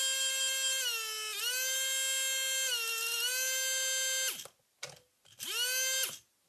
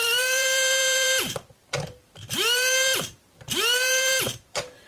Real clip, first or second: first